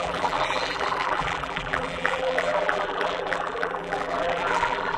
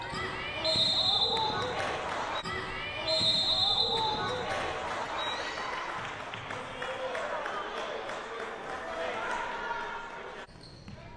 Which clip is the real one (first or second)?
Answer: second